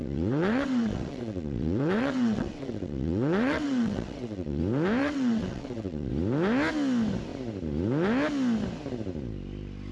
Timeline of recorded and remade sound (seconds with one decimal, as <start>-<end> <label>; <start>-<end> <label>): 0.0-4.6 remade; 4.6-5.0 recorded; 5.0-6.1 remade; 6.1-9.9 recorded